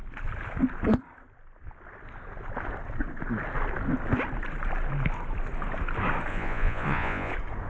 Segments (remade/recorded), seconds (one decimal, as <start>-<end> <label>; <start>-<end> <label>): 0.0-6.3 recorded; 6.3-7.3 remade; 7.3-7.7 recorded